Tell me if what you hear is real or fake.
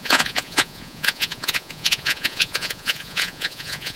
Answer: fake